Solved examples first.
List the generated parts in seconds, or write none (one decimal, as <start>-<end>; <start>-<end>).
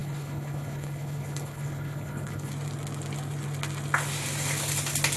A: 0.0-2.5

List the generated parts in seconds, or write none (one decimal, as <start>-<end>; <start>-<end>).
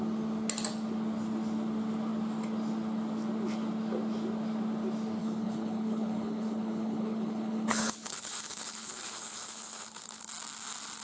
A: 5.2-10.2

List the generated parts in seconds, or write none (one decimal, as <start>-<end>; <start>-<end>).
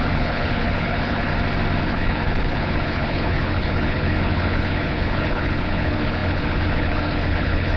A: 0.0-1.3; 1.8-7.8